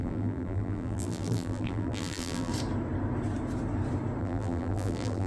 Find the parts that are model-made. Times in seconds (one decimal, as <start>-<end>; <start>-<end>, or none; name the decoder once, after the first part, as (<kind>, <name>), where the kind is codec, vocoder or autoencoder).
0.0-2.5 (vocoder, BigVGAN v2); 4.2-5.3

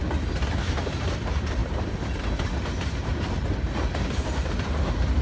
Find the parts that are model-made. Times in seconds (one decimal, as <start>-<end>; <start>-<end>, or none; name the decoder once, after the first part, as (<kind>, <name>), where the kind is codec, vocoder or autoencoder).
1.6-4.5 (vocoder, BigVGAN v2)

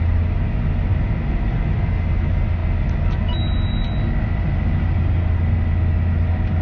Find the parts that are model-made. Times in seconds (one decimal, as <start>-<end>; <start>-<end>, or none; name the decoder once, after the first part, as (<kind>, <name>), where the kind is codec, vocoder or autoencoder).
0.9-1.9 (vocoder, BigVGAN v2)

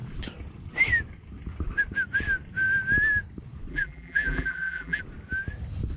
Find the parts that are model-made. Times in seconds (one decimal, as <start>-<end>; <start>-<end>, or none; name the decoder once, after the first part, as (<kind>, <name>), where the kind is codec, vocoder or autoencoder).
3.7-5.0 (vocoder, BigVGAN v2)

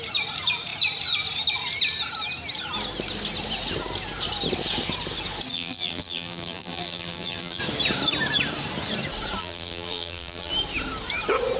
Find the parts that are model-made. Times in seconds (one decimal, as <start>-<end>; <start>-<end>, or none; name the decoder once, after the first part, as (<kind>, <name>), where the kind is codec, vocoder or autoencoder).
5.5-7.6 (vocoder, BigVGAN v2); 9.4-10.5

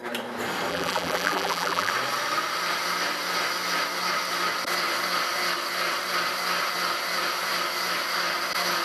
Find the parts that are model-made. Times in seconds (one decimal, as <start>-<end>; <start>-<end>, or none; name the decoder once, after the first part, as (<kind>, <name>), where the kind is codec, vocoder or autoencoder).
0.7-1.9 (vocoder, BigVGAN v2)

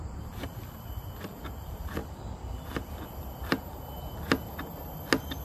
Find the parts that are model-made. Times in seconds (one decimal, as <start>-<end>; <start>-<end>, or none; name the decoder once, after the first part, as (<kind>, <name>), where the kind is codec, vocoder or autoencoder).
0.0-2.0 (vocoder, BigVGAN v2)

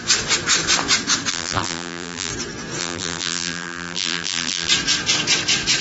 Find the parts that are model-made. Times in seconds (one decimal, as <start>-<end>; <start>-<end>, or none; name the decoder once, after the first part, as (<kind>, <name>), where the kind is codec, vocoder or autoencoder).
1.3-2.3 (vocoder, BigVGAN v2); 2.8-4.7